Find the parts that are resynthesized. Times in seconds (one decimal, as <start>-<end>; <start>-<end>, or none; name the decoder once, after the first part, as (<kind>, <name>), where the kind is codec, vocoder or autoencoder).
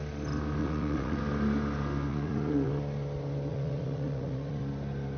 0.6-1.2 (vocoder, Vocos); 2.1-2.7; 3.5-4.6